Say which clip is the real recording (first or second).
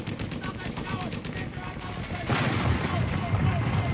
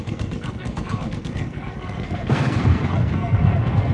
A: first